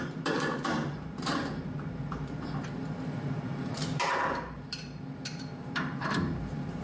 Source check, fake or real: fake